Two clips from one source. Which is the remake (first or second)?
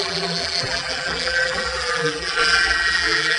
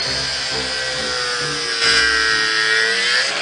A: first